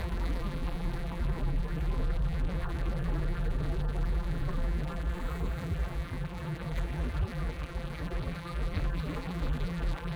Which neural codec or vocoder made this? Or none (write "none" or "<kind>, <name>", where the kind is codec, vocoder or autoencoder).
vocoder, BigVGAN v2